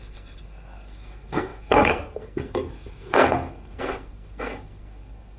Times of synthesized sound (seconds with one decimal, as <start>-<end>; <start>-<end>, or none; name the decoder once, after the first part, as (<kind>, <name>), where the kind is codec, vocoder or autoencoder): 0.0-5.4 (codec, SNAC)